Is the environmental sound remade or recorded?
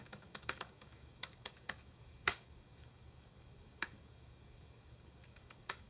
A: remade